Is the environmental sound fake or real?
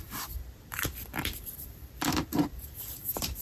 fake